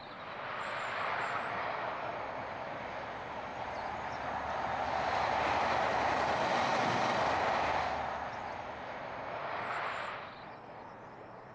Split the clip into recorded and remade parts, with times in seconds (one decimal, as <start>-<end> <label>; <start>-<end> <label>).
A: 0.0-11.5 recorded